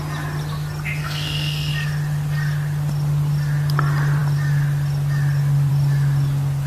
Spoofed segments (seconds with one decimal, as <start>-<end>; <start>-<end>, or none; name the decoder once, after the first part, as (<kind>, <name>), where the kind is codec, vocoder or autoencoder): 1.0-1.7 (codec, SNAC)